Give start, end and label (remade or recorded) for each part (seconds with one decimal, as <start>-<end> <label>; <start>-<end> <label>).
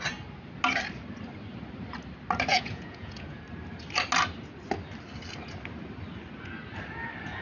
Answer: 0.0-2.5 recorded; 2.5-3.4 remade; 3.4-7.4 recorded